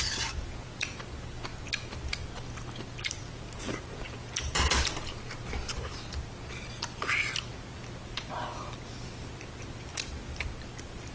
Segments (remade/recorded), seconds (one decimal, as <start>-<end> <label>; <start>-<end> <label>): 0.0-11.1 recorded